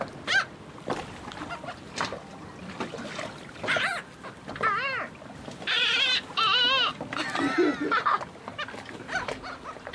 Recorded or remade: recorded